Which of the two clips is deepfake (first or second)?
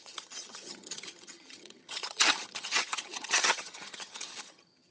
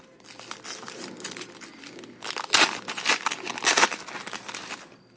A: first